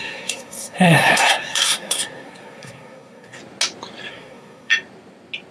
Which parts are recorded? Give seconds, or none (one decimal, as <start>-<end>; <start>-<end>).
3.4-4.1; 4.7-5.5